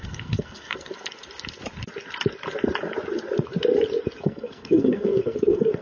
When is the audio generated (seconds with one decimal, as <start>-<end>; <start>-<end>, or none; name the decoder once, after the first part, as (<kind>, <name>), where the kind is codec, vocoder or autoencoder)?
0.0-0.9 (codec, SNAC); 4.2-5.8